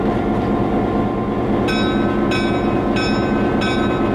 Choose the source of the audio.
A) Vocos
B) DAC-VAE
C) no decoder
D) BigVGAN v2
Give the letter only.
C